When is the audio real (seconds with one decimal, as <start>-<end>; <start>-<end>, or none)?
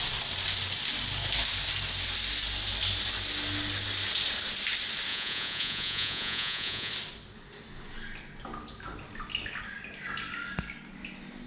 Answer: 0.0-5.1; 6.9-11.5